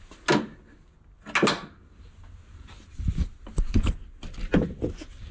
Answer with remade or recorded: recorded